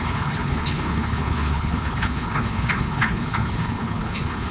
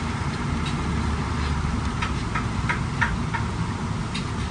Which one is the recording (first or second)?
second